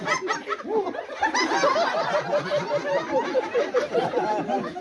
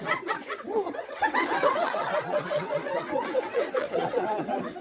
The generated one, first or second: second